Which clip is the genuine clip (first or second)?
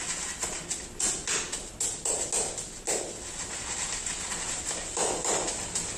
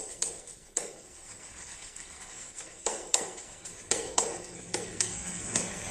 first